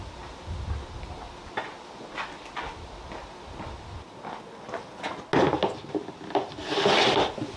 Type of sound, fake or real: real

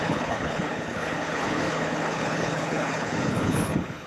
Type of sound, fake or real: fake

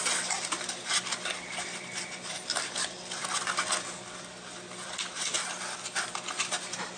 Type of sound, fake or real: real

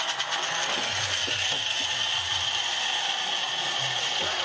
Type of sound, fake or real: real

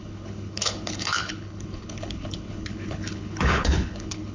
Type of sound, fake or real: fake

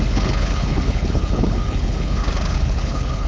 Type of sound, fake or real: fake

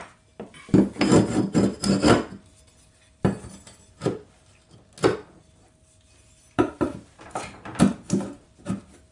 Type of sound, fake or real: real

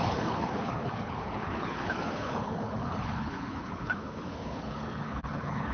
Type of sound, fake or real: fake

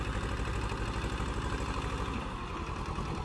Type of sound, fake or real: real